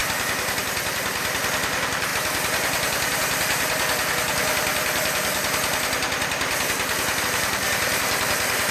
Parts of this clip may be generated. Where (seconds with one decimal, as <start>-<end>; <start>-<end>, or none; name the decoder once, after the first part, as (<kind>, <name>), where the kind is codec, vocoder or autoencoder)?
0.6-2.1 (vocoder, BigVGAN v2); 7.2-8.7